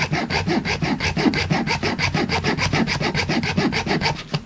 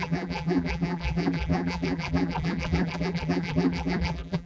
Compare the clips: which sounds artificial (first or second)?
second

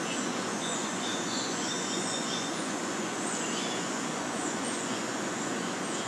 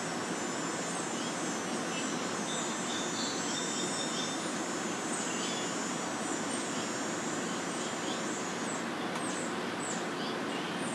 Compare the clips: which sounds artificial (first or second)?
first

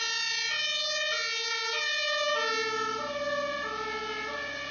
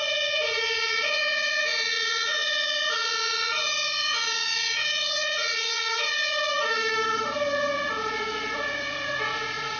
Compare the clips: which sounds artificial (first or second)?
second